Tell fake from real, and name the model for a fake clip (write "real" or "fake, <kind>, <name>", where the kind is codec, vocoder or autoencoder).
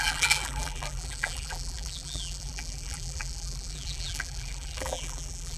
fake, vocoder, BigVGAN v2